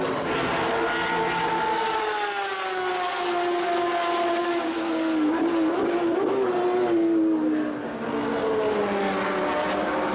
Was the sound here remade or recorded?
recorded